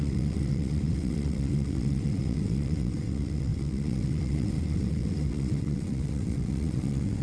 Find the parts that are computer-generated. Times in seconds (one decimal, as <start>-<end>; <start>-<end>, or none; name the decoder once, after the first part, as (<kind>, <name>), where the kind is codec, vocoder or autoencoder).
0.0-7.2 (vocoder, WaveNeXt)